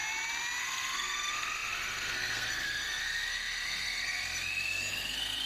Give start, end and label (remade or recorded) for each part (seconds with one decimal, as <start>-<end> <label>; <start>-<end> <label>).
0.0-0.6 recorded; 0.6-5.5 remade

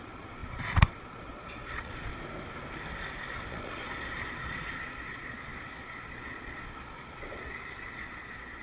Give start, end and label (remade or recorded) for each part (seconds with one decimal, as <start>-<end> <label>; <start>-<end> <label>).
0.0-2.1 remade; 2.1-3.5 recorded; 3.5-8.6 remade

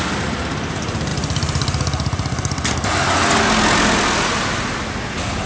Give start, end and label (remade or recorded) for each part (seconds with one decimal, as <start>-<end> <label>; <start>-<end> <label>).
0.0-5.5 recorded

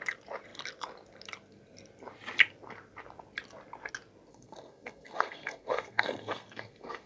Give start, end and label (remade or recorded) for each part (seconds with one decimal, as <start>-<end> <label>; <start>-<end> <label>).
0.0-4.3 recorded; 4.3-7.1 remade